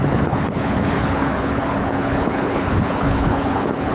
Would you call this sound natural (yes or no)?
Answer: no